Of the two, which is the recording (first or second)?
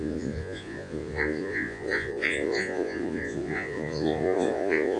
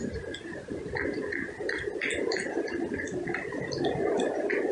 second